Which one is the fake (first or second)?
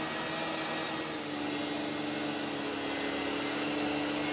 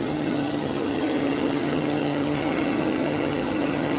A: second